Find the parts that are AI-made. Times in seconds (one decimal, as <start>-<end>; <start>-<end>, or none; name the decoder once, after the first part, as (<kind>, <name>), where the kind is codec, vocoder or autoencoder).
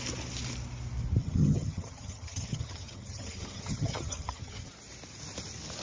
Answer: 1.2-4.7 (vocoder, HiFi-GAN)